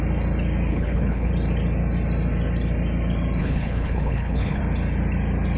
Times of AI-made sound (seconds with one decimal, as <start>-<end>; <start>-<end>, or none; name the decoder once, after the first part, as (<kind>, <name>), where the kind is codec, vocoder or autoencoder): 0.7-1.3 (codec, HILCodec); 3.4-4.6